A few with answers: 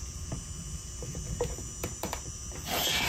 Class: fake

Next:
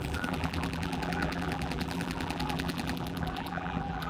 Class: fake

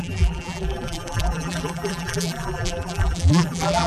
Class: fake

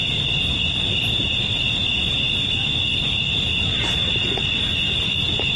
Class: fake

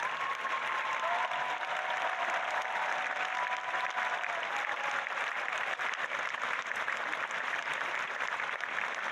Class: fake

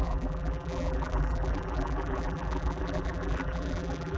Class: fake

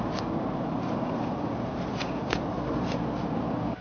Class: real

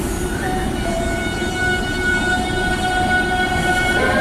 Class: fake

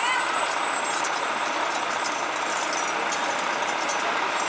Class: real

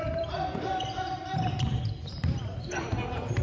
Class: fake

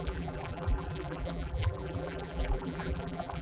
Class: fake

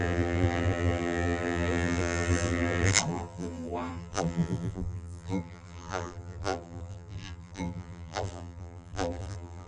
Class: fake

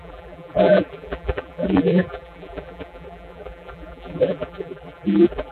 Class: fake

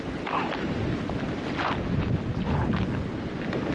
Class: real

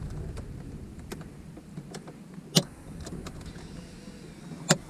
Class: real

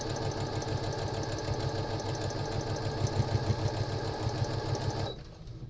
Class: real